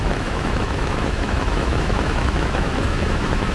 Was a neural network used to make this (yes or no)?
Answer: yes